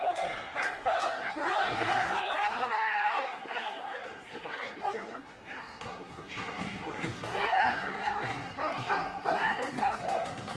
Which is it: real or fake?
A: fake